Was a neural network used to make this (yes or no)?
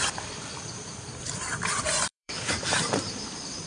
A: yes